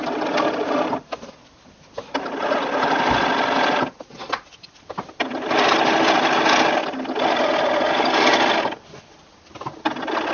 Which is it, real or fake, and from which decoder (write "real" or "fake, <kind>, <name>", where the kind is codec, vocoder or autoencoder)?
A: real